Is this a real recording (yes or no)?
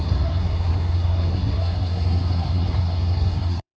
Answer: no